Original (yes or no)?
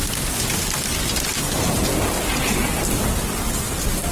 yes